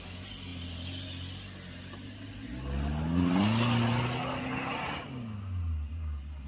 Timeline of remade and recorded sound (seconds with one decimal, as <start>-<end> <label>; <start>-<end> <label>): 0.0-6.5 recorded